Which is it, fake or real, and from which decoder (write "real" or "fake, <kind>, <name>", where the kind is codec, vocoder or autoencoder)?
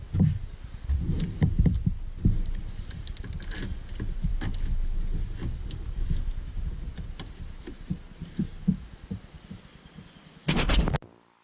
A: real